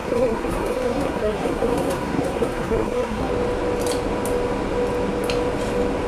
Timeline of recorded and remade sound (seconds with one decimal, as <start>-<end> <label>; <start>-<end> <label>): 0.0-3.3 remade; 3.3-6.1 recorded